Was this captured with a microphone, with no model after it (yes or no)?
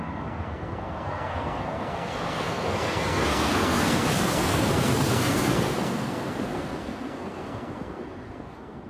no